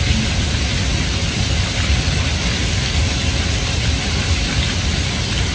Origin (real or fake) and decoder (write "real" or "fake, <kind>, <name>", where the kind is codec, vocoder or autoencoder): real